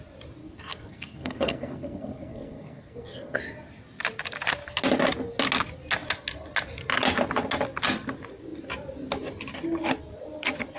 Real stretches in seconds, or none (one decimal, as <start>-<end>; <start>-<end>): 0.0-0.4; 3.4-10.8

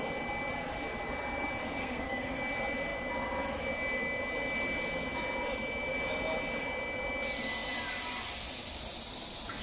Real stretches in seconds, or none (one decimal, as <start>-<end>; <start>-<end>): 0.0-1.8; 2.4-9.6

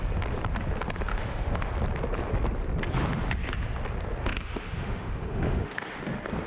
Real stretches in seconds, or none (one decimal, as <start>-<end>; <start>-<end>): 0.0-1.1; 1.7-4.2; 6.0-6.5

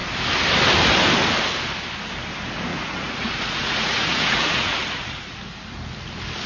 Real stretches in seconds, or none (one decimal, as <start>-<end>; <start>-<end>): 0.0-2.7; 5.4-6.5